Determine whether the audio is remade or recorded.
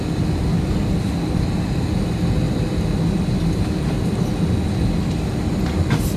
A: recorded